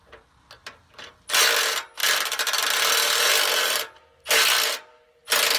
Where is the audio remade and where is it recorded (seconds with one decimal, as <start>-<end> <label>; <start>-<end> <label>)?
0.0-5.6 recorded